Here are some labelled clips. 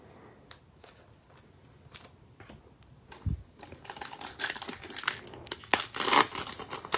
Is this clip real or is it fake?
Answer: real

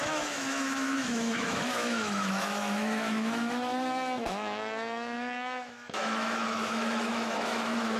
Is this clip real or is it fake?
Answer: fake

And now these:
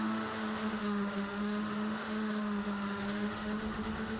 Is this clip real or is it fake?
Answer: fake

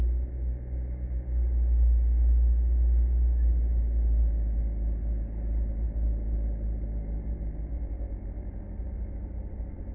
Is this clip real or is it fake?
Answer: real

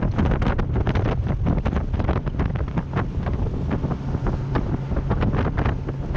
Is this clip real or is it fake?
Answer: real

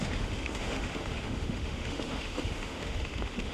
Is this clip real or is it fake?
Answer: fake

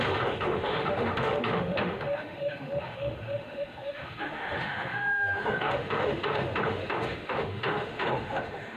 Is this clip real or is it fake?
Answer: fake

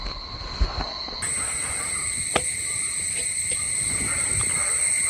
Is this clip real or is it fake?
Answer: real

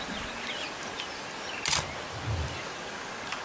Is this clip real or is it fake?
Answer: real